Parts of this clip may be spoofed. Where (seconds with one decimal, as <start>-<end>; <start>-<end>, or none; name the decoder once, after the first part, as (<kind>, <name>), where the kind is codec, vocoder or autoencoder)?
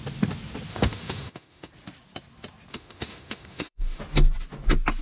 0.7-1.7 (autoencoder, DAC-VAE); 2.7-4.0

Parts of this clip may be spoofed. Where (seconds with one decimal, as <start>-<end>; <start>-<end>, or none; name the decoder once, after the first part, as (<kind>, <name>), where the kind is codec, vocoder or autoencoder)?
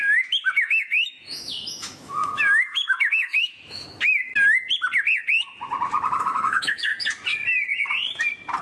0.0-4.3 (autoencoder, DAC-VAE); 6.2-6.9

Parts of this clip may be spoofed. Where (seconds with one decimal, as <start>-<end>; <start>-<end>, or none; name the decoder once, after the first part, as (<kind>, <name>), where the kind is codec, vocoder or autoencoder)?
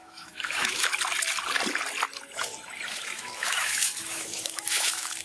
0.0-0.9 (autoencoder, DAC-VAE); 2.9-5.2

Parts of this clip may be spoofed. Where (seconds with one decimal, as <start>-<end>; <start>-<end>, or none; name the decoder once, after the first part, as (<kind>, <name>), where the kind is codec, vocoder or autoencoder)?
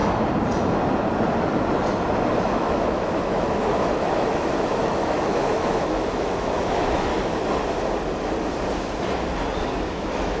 2.4-7.1 (autoencoder, DAC-VAE); 9.6-10.4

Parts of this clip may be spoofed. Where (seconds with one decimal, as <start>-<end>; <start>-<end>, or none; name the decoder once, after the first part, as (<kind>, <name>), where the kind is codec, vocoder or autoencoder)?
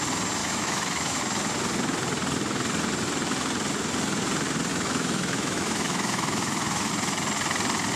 0.4-1.2 (autoencoder, DAC-VAE); 4.7-6.9